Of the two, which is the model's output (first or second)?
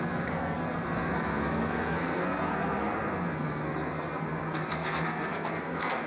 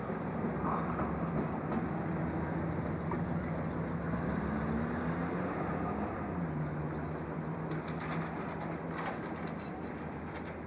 first